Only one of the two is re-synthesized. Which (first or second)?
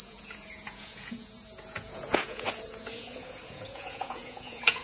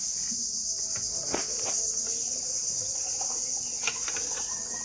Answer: first